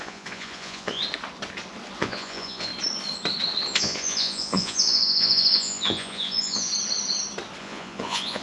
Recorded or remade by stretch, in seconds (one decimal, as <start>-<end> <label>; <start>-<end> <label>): 0.0-1.0 remade; 1.0-2.0 recorded; 2.0-2.7 remade; 2.7-3.7 recorded; 3.7-6.7 remade; 6.7-7.6 recorded; 7.6-8.4 remade